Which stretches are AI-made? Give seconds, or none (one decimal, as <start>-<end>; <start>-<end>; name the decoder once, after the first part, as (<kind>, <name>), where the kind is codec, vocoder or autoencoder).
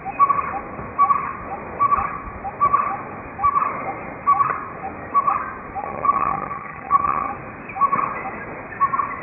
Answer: 5.8-7.3 (vocoder, HiFi-GAN)